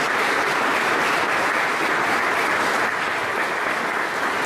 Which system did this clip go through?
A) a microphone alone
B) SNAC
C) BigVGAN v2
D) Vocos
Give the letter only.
A